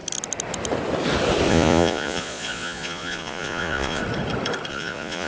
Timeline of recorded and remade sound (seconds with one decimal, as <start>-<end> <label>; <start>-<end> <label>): 0.0-1.5 recorded; 1.5-4.0 remade; 4.0-4.7 recorded; 4.7-5.3 remade